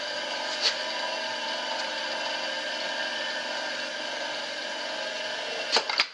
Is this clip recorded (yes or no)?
yes